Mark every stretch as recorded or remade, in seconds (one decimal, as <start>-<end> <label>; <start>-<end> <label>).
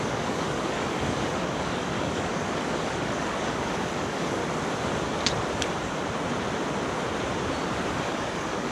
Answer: 0.0-4.4 remade; 4.4-7.9 recorded; 7.9-8.7 remade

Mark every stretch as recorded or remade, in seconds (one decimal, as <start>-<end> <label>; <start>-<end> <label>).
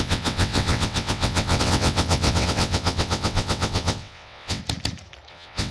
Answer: 0.0-4.6 remade; 4.6-5.3 recorded; 5.3-5.7 remade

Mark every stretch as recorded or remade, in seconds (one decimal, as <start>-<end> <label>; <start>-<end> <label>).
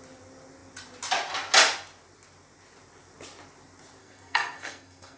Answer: 0.0-4.0 recorded; 4.0-5.2 remade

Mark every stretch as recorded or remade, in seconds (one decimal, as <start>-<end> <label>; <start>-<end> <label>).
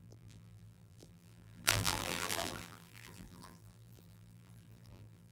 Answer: 0.0-5.3 remade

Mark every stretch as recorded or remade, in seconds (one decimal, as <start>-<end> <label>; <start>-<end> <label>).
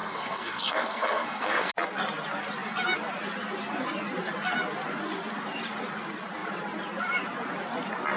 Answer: 0.0-1.7 remade; 1.7-8.2 recorded